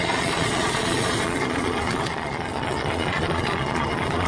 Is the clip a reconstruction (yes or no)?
yes